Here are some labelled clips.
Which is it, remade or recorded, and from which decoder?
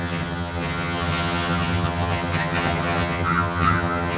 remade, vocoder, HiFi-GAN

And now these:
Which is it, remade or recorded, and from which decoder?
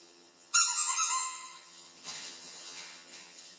remade, vocoder, HiFi-GAN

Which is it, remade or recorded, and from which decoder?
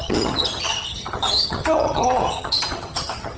remade, vocoder, HiFi-GAN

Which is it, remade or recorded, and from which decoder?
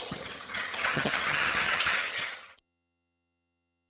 remade, vocoder, HiFi-GAN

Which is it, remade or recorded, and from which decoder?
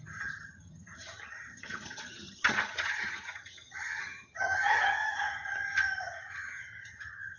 remade, vocoder, HiFi-GAN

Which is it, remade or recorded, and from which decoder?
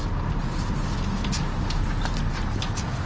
recorded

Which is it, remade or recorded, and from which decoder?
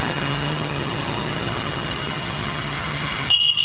remade, vocoder, HiFi-GAN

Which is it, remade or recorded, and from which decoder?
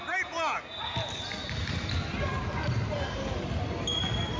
recorded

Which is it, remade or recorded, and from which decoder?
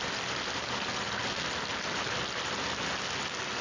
recorded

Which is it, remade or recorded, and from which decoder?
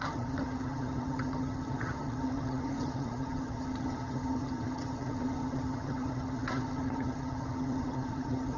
remade, vocoder, HiFi-GAN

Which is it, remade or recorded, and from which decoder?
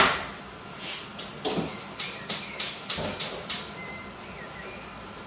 recorded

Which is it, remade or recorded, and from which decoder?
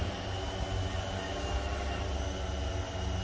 recorded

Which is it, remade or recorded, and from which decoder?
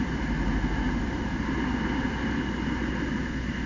recorded